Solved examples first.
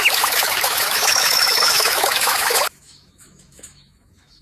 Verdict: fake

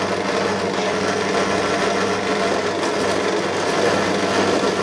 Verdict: real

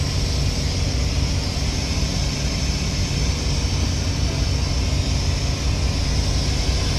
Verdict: real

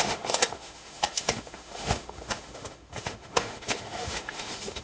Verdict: fake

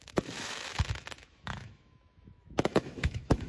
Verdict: fake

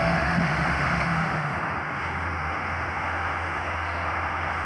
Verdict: fake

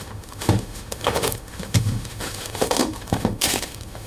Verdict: fake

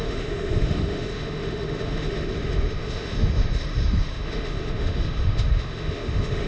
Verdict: fake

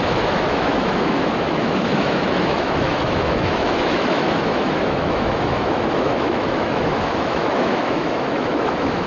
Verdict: fake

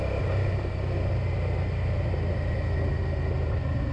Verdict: real